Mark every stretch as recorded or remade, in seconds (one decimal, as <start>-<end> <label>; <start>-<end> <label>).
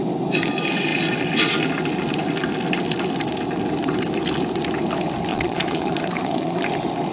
0.0-5.3 recorded; 5.3-6.6 remade; 6.6-7.1 recorded